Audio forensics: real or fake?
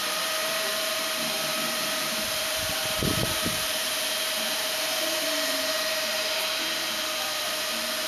fake